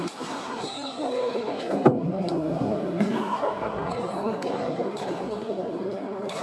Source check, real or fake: fake